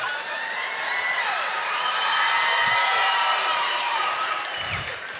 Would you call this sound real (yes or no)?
no